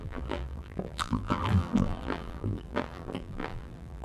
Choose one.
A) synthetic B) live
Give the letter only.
A